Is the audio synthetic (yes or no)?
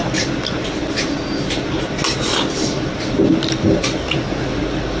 no